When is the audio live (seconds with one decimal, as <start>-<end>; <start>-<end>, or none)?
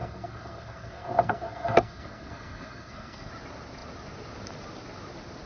3.3-5.5